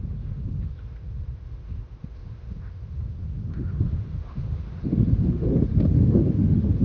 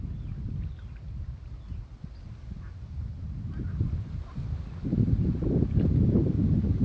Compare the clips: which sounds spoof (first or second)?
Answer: first